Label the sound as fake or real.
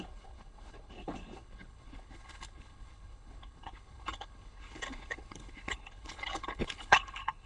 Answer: fake